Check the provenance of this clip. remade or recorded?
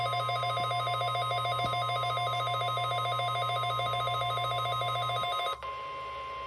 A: recorded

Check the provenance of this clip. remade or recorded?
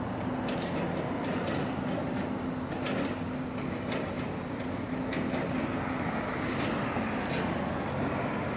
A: recorded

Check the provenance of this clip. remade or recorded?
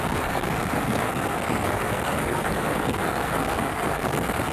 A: remade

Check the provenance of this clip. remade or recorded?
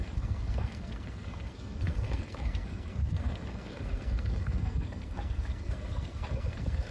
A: remade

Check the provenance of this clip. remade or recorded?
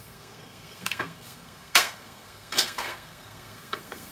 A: remade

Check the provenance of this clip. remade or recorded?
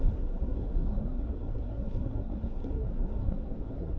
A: remade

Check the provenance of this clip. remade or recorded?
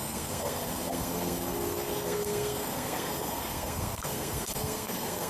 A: remade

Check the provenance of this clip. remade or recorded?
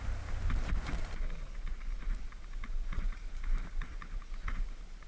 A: recorded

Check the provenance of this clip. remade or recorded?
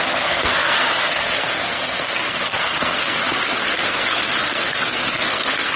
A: remade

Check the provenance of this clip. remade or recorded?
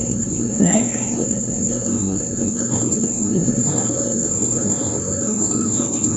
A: remade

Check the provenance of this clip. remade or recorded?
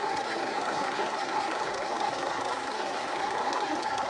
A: remade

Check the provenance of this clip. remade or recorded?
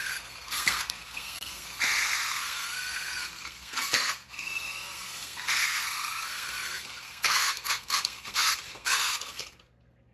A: remade